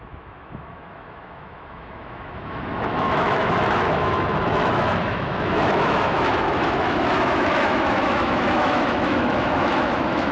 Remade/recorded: remade